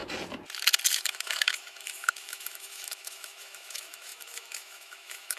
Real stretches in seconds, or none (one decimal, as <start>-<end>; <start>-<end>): 0.0-0.9